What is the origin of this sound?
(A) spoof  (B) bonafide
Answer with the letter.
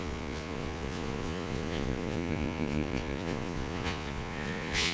A